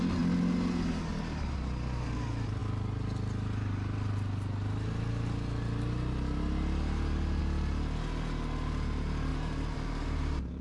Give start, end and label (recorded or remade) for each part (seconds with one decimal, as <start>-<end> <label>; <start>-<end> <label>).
0.0-9.3 recorded; 9.3-10.6 remade